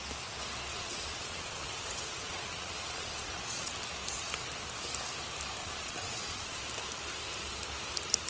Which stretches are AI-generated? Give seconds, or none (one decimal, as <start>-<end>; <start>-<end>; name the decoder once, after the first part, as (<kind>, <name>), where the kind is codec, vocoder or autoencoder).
0.7-3.7 (vocoder, Vocos); 5.6-6.6